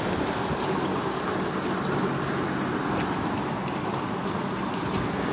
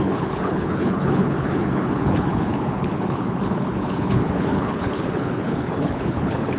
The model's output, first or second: second